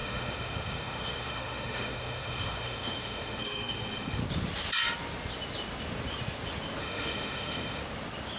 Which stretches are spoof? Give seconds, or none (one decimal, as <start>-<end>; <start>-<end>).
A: 0.0-4.2; 6.8-7.8